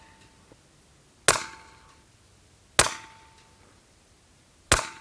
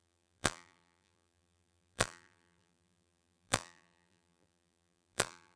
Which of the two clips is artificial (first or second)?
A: second